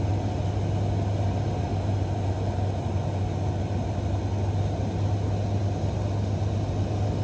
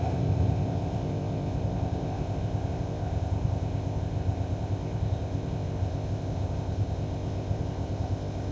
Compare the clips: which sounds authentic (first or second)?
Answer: first